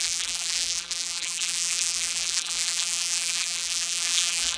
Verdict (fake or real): fake